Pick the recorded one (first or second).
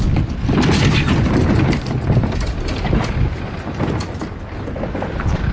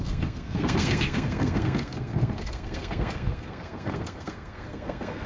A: first